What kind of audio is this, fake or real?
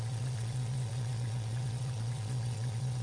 fake